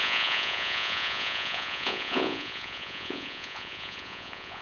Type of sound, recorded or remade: remade